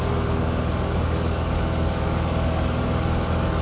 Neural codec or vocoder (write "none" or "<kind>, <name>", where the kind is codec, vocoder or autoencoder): codec, DAC